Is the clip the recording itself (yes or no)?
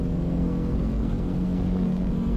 no